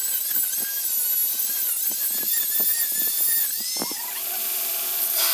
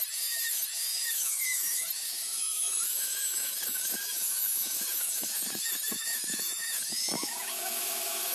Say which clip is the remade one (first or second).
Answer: second